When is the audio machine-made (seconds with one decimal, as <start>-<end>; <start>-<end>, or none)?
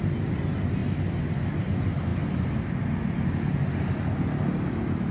none